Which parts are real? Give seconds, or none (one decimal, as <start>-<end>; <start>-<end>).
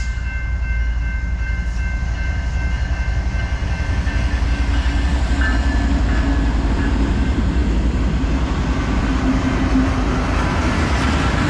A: 0.0-11.5